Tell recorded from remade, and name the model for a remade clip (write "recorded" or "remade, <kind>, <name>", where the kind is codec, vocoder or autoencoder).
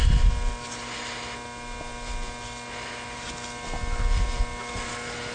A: recorded